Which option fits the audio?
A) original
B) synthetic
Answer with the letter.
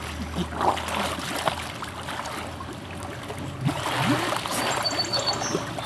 A